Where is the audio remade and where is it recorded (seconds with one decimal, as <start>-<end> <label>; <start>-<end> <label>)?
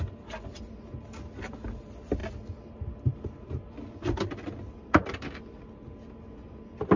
0.0-7.0 recorded